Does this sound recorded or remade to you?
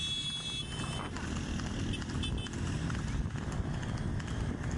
recorded